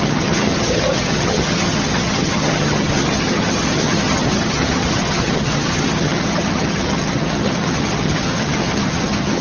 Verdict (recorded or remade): remade